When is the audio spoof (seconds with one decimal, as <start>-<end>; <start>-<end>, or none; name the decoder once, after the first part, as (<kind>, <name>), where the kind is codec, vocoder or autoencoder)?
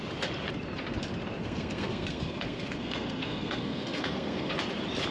1.4-4.5 (codec, SNAC)